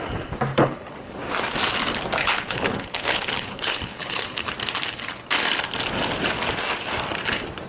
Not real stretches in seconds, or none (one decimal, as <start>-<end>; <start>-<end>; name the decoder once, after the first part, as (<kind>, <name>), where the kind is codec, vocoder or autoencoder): 0.5-1.1 (codec, HILCodec); 2.2-4.5